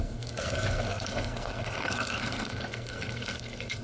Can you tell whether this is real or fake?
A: fake